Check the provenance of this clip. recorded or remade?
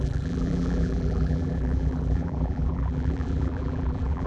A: remade